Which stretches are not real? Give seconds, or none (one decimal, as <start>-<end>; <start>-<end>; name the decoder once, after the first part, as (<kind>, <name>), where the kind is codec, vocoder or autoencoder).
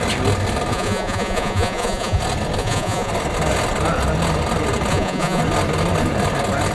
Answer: 0.7-2.2 (vocoder, Vocos); 2.6-3.1; 4.9-5.4